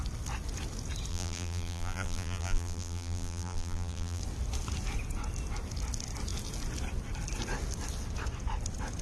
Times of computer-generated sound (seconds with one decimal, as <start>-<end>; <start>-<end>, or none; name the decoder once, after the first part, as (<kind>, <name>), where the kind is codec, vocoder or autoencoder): 1.1-4.2 (vocoder, BigVGAN v2)